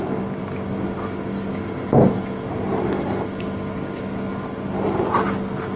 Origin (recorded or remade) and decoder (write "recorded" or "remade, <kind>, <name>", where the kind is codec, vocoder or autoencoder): recorded